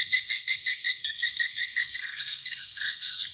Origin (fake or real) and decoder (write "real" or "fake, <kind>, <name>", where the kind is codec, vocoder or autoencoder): fake, codec, SNAC